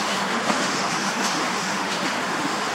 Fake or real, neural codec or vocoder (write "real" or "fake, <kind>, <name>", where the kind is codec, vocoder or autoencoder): fake, autoencoder, DAC-VAE